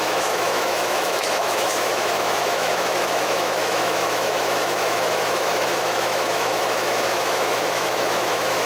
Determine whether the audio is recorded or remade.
remade